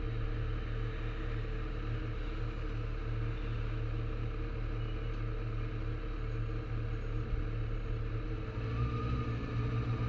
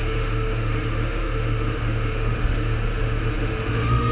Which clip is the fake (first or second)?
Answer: second